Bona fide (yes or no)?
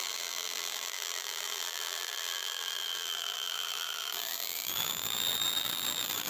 no